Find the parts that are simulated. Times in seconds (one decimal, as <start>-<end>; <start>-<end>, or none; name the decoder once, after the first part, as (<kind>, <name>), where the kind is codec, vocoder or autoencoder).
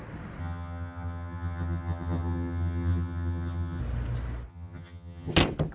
0.4-3.8 (vocoder, HiFi-GAN); 4.5-5.3